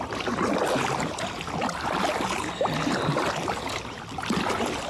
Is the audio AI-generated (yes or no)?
no